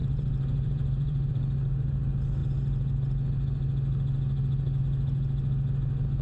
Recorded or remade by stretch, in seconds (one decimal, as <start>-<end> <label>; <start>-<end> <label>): 0.0-1.3 remade; 1.3-6.2 recorded